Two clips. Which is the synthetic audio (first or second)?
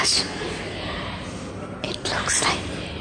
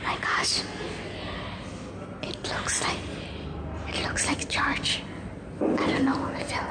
first